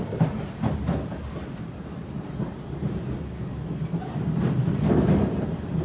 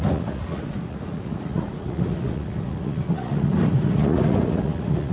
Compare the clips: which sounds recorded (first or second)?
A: first